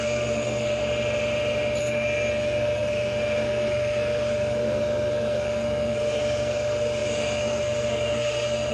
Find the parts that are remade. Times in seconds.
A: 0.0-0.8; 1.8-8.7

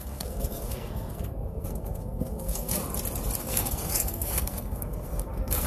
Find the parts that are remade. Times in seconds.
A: 0.0-2.8; 3.4-5.7

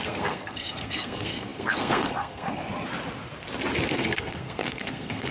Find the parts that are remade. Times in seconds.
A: 0.0-2.6; 3.9-5.3

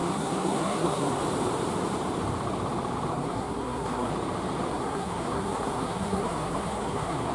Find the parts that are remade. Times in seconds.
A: 0.0-1.2; 3.1-4.1; 4.7-7.3

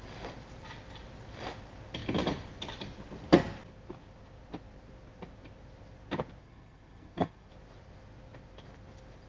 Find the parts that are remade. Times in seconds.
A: 6.4-7.5